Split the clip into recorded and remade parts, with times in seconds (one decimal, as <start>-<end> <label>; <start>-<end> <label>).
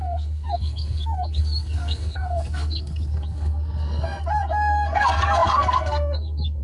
0.0-6.6 remade